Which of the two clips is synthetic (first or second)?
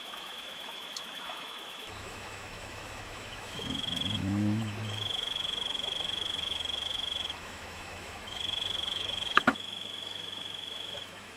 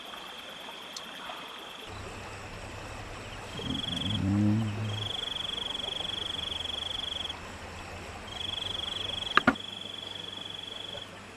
first